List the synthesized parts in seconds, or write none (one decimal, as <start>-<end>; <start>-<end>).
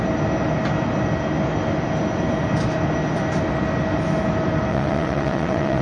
4.7-5.8